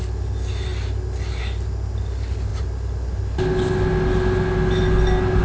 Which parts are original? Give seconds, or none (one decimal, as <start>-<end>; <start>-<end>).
0.0-5.4